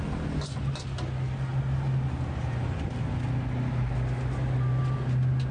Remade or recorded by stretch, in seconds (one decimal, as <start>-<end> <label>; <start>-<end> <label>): 0.0-5.5 recorded